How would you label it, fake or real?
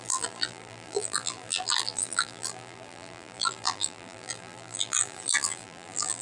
fake